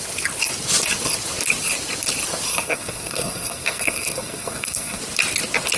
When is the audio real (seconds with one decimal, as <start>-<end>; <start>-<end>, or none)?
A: 0.0-2.5; 5.0-5.8